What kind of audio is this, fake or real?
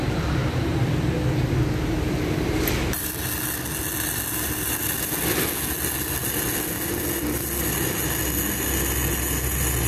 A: real